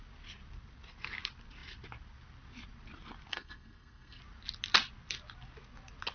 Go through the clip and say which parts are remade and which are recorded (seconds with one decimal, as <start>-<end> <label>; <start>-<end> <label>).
0.0-3.3 recorded; 3.3-4.2 remade; 4.2-6.1 recorded